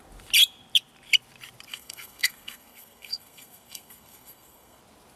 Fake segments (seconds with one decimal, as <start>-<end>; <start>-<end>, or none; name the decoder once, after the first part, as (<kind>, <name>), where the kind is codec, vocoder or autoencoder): 1.7-4.8 (codec, SNAC)